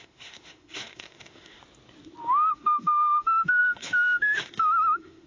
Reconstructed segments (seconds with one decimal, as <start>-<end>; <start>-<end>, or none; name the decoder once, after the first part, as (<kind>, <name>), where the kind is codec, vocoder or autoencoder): 0.0-1.6 (autoencoder, DAC-VAE); 2.5-5.3